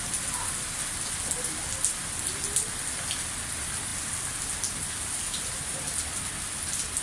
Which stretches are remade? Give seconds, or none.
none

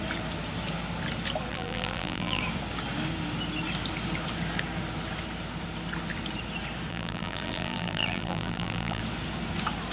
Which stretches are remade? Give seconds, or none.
1.5-2.4 (vocoder, BigVGAN v2); 6.9-9.0

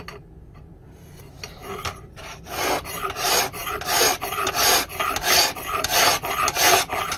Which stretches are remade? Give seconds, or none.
3.6-6.0 (vocoder, BigVGAN v2)

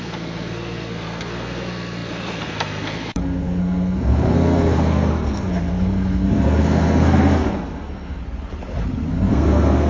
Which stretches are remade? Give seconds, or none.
0.0-8.2 (codec, SNAC); 9.1-9.9

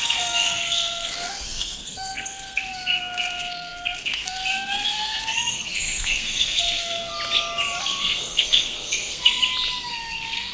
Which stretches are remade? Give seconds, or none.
0.0-7.1 (codec, SNAC); 7.8-9.4; 9.9-10.5